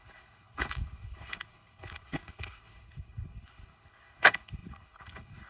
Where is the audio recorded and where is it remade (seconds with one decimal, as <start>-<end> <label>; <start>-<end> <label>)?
0.0-5.5 remade